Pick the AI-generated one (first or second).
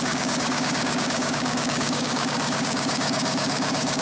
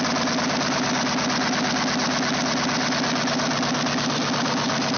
first